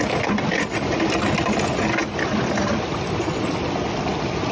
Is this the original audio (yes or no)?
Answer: yes